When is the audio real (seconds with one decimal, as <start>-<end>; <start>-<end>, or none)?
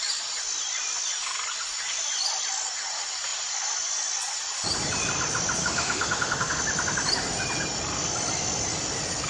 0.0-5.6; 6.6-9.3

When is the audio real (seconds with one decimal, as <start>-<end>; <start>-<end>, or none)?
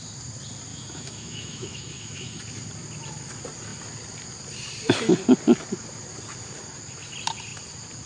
0.0-0.7; 2.4-8.1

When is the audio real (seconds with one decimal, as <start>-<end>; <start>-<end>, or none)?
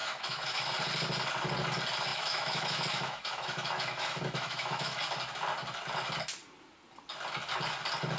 0.7-2.1; 5.0-8.2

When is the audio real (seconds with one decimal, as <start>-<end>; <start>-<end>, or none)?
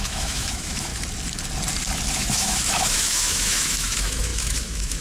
0.9-2.1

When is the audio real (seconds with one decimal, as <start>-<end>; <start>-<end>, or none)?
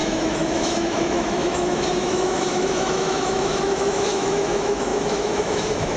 none